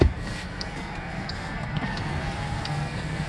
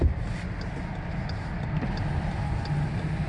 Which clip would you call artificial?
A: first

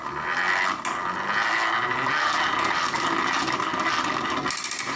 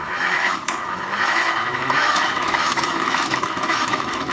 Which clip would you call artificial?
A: second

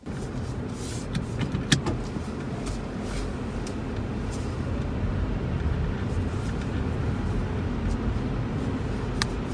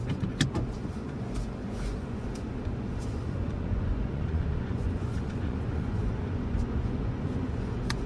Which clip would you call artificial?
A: second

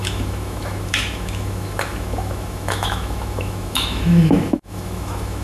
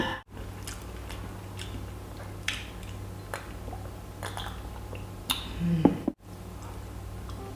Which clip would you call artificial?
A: first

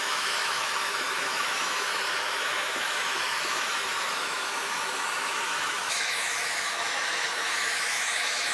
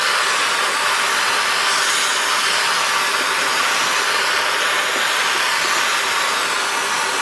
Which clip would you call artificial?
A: first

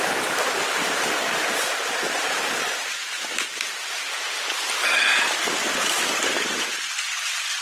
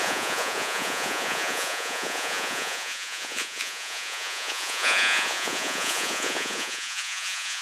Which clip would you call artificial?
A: second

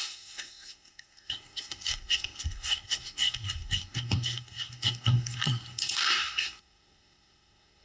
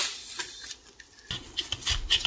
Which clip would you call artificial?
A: first